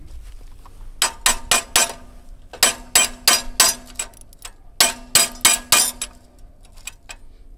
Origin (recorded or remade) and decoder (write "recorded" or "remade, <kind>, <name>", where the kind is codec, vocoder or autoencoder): recorded